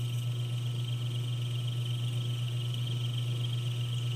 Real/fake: real